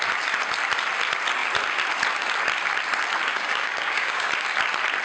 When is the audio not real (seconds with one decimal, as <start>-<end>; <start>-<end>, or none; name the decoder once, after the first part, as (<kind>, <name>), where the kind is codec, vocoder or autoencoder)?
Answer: 3.3-4.3 (codec, DAC)